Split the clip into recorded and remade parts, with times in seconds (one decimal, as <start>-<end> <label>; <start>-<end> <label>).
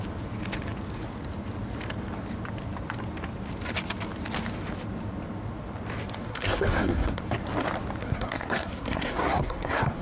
0.0-6.3 recorded; 6.3-7.2 remade; 7.2-8.0 recorded; 8.0-10.0 remade